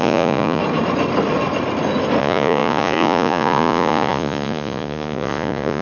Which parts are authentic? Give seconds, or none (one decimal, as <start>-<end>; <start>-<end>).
0.6-2.2